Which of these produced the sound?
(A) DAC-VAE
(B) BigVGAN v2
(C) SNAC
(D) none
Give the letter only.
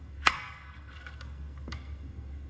C